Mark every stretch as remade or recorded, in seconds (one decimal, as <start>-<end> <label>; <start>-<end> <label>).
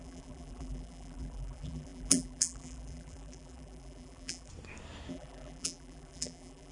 0.0-4.5 remade; 4.5-5.1 recorded; 5.1-6.7 remade